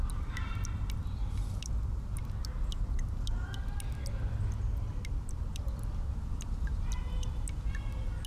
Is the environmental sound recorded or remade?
recorded